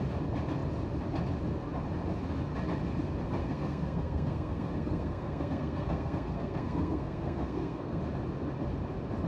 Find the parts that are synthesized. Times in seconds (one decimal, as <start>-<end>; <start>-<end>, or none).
3.4-8.0